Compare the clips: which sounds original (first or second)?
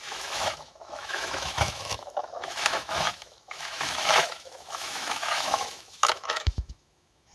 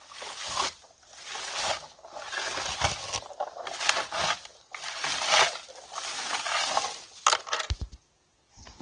second